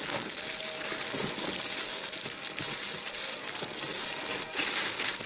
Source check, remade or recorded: recorded